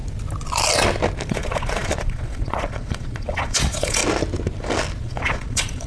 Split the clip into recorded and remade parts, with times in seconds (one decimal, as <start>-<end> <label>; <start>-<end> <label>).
0.0-1.3 recorded; 1.3-4.0 remade; 4.0-5.0 recorded; 5.0-5.9 remade